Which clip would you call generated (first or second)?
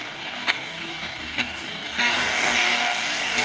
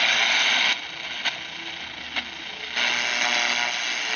first